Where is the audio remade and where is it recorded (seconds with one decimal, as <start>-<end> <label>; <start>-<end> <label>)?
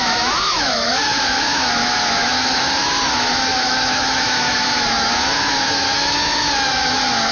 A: 0.0-7.3 remade